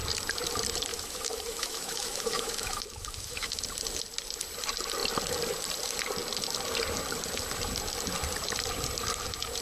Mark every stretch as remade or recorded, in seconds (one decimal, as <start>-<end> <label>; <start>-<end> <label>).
0.0-0.9 recorded; 0.9-3.6 remade; 3.6-9.6 recorded